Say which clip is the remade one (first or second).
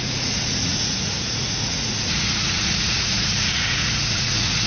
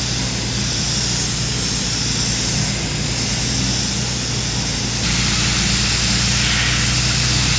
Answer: first